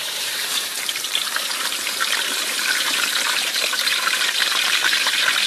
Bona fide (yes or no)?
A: no